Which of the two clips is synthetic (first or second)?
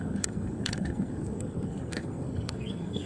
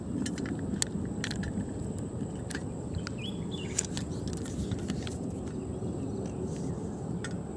first